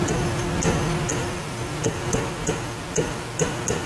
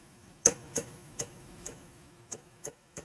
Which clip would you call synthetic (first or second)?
second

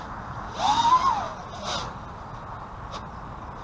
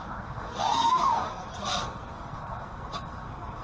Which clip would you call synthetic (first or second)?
second